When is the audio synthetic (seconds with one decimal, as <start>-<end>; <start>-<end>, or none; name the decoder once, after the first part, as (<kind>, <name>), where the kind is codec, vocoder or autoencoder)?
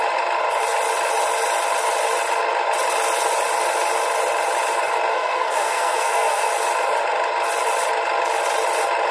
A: 5.1-6.5 (codec, SNAC)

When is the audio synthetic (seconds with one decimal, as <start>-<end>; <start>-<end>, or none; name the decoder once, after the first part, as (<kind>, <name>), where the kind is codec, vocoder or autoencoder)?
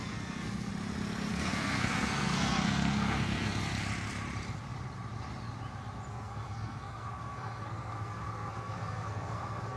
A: 0.0-0.7 (codec, SNAC); 1.3-3.6; 6.1-9.8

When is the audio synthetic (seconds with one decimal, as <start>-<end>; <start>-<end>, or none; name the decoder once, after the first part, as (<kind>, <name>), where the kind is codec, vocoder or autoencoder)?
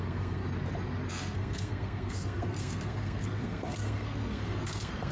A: 0.0-0.4 (codec, SNAC); 1.1-5.1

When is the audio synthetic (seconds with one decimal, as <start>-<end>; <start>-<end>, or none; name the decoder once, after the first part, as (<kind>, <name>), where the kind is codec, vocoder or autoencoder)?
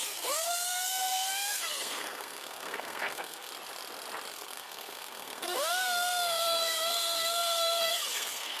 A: 0.0-3.5 (codec, SNAC); 4.3-8.6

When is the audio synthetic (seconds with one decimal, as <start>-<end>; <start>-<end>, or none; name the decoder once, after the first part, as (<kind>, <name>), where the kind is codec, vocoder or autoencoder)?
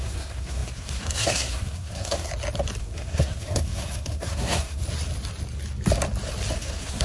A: 0.0-2.3 (codec, SNAC); 2.8-4.8; 6.6-7.0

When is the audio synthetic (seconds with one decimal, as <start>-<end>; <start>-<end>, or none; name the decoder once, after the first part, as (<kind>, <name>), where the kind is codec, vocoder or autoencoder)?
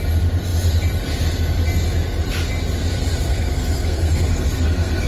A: 3.3-5.1 (codec, SNAC)